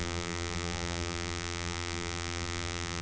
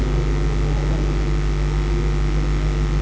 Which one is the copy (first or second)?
first